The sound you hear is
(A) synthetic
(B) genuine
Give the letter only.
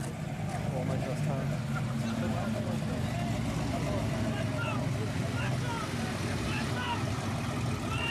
B